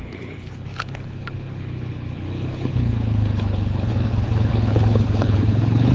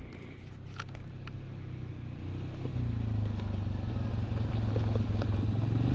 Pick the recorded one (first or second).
second